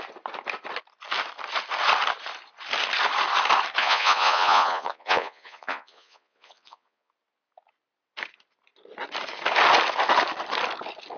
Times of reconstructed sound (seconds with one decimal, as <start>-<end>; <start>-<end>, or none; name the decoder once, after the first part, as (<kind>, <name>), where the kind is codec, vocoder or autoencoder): 3.8-7.1 (vocoder, Vocos)